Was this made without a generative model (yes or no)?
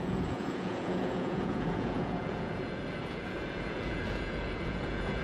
no